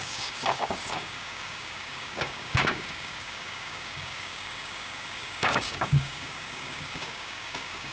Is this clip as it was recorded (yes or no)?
no